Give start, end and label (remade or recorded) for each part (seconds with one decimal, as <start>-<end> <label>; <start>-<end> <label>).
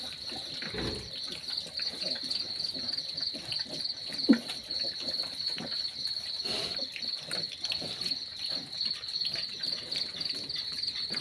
0.0-11.2 recorded